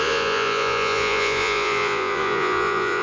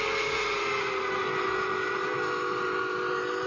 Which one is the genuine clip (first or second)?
second